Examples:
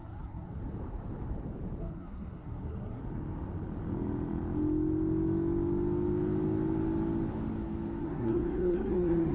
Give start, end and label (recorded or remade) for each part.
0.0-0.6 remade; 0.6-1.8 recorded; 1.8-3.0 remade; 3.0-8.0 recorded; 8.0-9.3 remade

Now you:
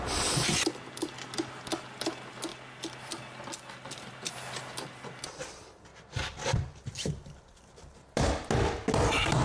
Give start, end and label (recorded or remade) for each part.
0.0-9.4 recorded